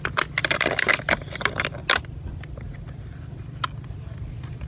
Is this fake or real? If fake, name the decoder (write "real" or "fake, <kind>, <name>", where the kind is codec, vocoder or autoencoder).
real